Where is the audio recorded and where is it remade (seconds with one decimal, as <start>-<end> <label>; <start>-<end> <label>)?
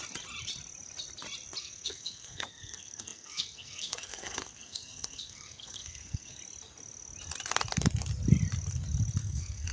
0.0-1.6 recorded; 1.6-6.4 remade; 6.4-9.2 recorded; 9.2-9.7 remade